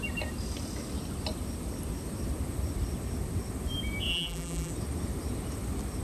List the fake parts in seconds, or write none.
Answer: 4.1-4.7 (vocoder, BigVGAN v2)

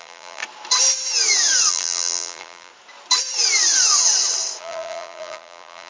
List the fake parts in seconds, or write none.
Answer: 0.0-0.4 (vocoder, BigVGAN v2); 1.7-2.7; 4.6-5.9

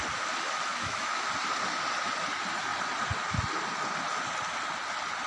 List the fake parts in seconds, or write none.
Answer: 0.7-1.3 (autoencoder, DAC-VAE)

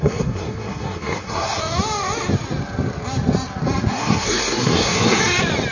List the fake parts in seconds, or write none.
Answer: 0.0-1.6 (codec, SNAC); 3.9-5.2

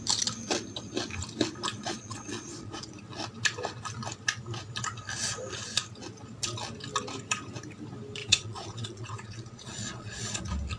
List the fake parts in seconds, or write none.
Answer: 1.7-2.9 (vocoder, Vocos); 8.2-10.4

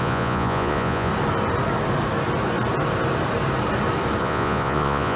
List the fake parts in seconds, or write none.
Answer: 0.0-1.1 (vocoder, Vocos); 4.2-5.2